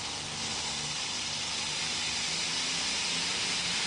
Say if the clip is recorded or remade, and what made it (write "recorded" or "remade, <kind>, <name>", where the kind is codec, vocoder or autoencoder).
recorded